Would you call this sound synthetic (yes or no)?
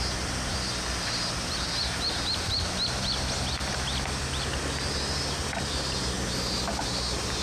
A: no